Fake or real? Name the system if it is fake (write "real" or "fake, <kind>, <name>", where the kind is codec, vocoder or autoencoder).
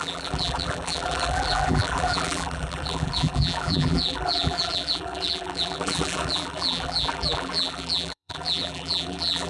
fake, vocoder, BigVGAN v2